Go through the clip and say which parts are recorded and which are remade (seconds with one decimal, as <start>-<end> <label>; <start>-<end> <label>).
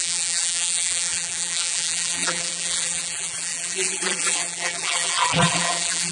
0.0-6.1 remade